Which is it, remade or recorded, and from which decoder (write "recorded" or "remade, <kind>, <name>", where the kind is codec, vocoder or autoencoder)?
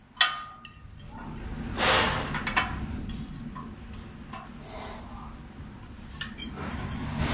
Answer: recorded